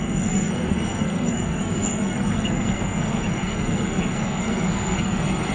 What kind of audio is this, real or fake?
fake